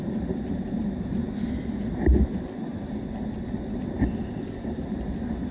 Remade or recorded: recorded